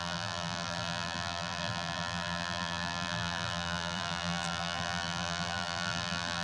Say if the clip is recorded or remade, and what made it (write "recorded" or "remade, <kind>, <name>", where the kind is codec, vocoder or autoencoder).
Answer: remade, vocoder, BigVGAN v2